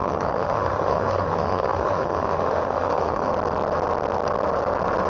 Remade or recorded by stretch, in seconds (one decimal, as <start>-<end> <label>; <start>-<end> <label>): 0.0-3.3 remade; 3.3-5.1 recorded